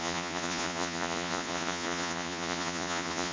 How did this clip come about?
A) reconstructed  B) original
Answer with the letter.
A